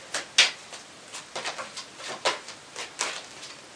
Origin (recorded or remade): recorded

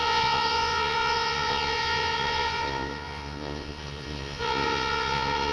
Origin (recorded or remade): remade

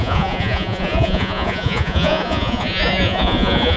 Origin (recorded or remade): remade